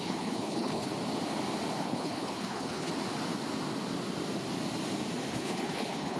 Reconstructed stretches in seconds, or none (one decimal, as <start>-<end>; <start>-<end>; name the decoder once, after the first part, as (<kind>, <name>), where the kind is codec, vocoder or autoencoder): 0.0-0.9 (codec, HILCodec); 1.8-2.9; 5.3-6.2